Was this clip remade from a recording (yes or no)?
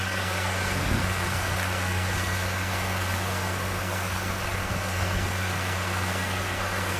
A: yes